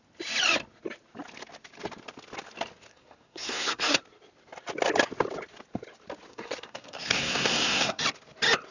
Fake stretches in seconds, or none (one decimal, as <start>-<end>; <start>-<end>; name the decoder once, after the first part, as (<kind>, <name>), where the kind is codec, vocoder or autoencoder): 2.9-4.0 (codec, SNAC); 6.3-8.0